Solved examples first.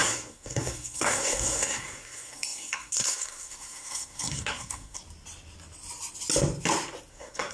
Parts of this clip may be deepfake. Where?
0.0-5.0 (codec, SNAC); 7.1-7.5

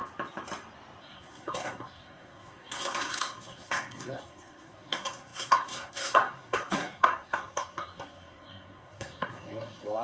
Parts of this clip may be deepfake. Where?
1.0-10.0 (codec, SNAC)

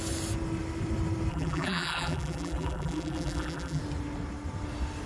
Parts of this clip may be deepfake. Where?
1.3-3.8 (vocoder, BigVGAN v2)

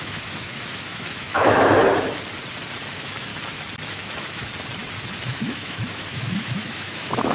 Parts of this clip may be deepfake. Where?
0.0-1.8 (autoencoder, DAC-VAE); 2.9-3.3; 3.9-4.5; 5.2-7.3

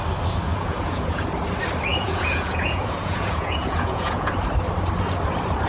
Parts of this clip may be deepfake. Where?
0.5-1.2 (vocoder, Vocos); 1.9-4.3

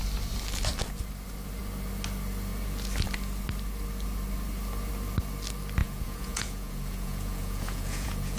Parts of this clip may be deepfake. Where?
5.8-8.4 (vocoder, Vocos)

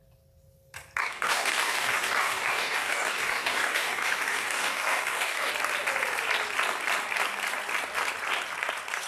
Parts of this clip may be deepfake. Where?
1.0-5.5 (codec, DAC)